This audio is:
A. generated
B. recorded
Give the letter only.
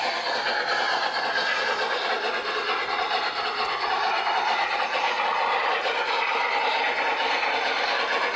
B